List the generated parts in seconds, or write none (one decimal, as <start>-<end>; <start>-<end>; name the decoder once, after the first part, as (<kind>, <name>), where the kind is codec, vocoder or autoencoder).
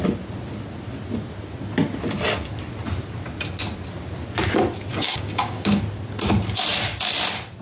4.9-5.8 (codec, DAC)